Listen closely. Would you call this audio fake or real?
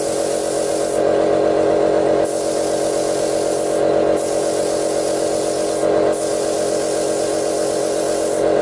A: real